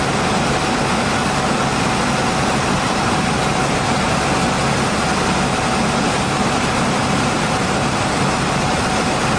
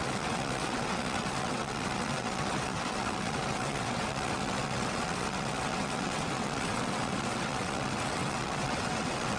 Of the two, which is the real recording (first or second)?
first